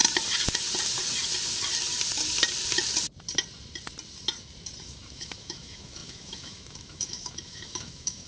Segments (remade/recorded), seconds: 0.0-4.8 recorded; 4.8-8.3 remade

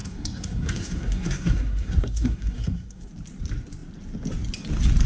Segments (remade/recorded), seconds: 0.0-3.1 remade; 3.1-5.1 recorded

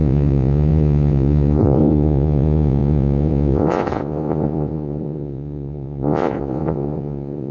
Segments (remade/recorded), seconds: 0.0-7.5 remade